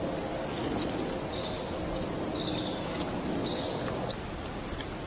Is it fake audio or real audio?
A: real